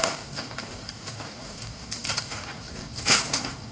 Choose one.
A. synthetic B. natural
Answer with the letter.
A